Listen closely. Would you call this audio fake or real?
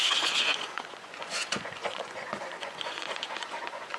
fake